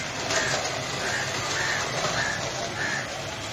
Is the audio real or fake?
real